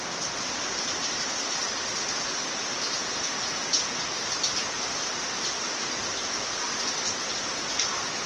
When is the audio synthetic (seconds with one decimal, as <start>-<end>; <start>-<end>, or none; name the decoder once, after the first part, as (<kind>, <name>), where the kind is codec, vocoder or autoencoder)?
3.0-4.0 (vocoder, Vocos)